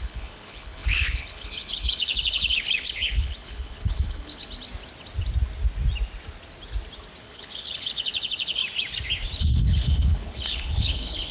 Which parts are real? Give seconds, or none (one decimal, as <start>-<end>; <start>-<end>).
4.4-7.2; 8.6-9.4